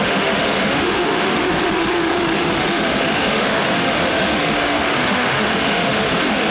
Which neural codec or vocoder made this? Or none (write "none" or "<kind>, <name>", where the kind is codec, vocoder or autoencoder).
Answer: autoencoder, DAC-VAE